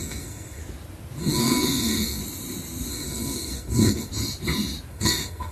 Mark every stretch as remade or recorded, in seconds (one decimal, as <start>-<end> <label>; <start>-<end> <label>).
0.0-0.6 remade; 0.6-1.2 recorded; 1.2-2.2 remade; 2.2-2.9 recorded; 2.9-4.1 remade; 4.1-4.9 recorded; 4.9-5.5 remade